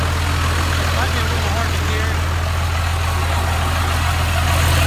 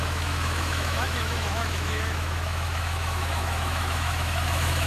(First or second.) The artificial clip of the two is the second